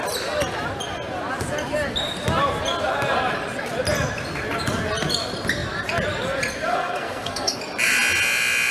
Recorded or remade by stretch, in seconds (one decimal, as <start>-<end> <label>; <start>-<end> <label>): 0.0-6.7 recorded; 6.7-7.6 remade; 7.6-8.7 recorded